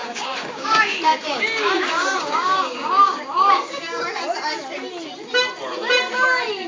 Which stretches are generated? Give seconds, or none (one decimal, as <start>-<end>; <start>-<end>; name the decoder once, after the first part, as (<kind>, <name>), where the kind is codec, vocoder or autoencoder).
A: 0.0-4.0 (codec, DAC)